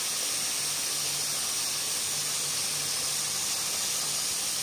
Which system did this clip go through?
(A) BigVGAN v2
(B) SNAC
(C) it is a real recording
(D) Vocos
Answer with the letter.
C